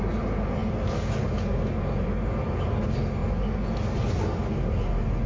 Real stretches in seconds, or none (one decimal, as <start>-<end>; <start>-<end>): 0.0-5.3